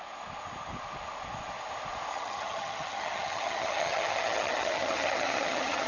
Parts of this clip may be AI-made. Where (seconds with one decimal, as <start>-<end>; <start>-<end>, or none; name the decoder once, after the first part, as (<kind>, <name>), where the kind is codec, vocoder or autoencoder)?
2.1-5.9 (vocoder, HiFi-GAN)